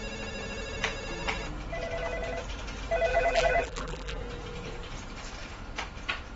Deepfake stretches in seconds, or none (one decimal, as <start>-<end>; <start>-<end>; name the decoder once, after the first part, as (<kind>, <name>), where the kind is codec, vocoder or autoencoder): 3.1-4.2 (vocoder, BigVGAN v2)